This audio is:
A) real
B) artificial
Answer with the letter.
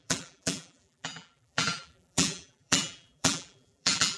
B